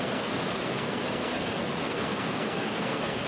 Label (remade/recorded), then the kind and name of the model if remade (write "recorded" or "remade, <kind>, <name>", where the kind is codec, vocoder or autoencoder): remade, codec, SNAC